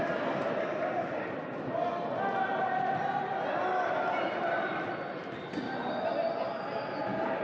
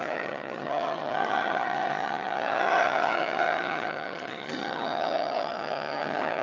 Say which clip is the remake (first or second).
second